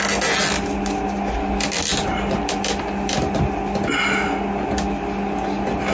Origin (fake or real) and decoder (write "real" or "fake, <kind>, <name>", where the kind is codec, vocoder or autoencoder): real